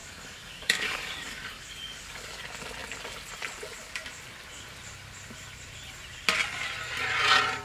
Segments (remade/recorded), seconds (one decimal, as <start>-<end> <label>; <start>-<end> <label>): 0.0-2.4 remade; 2.4-7.6 recorded